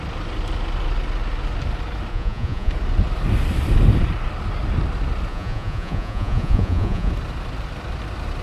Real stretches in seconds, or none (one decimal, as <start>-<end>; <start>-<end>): 0.0-2.1; 2.7-5.3; 7.1-8.4